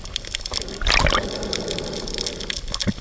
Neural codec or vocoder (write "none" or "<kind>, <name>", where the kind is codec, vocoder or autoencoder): none